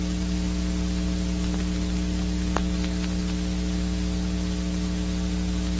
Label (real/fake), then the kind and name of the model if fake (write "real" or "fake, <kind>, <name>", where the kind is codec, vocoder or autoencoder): real